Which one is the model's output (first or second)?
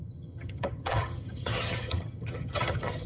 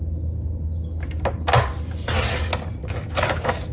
first